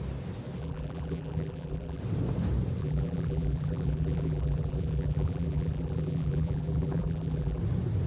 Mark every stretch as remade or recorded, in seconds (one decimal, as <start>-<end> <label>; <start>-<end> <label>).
0.0-0.6 recorded; 0.6-2.0 remade; 2.0-2.8 recorded; 2.8-7.6 remade; 7.6-8.1 recorded